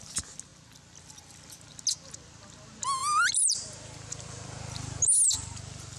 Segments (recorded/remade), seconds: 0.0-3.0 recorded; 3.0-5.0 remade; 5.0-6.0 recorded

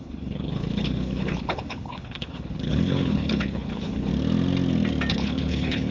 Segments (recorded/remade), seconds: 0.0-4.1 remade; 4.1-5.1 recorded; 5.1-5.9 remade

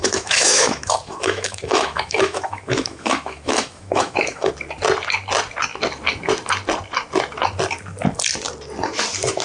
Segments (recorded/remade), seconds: 0.0-4.5 remade; 4.5-9.4 recorded

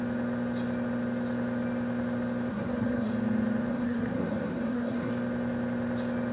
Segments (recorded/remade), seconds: 0.0-2.5 recorded; 2.5-3.1 remade; 3.1-3.7 recorded; 3.7-5.1 remade; 5.1-6.3 recorded

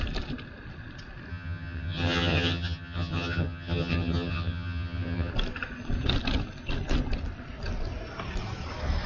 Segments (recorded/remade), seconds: 0.0-1.3 recorded; 1.3-5.3 remade; 5.3-9.1 recorded

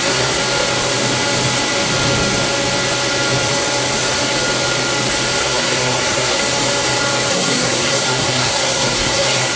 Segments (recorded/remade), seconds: 0.0-0.4 remade; 0.4-5.4 recorded; 5.4-6.4 remade; 6.4-7.3 recorded; 7.3-9.6 remade